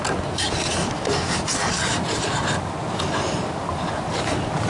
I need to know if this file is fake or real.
real